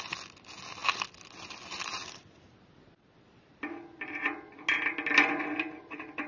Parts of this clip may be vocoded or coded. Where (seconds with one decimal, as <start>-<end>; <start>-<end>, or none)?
none

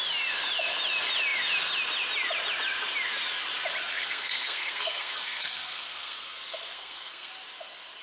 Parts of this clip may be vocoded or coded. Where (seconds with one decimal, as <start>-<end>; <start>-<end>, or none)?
3.9-7.3